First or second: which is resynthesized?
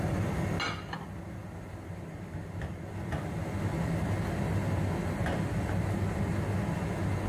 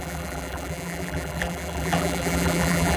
second